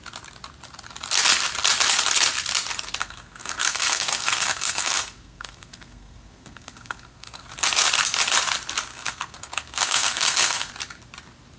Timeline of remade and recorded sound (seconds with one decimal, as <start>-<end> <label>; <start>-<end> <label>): 0.0-3.0 recorded; 3.0-7.5 remade; 7.5-8.9 recorded; 8.9-10.7 remade; 10.7-11.6 recorded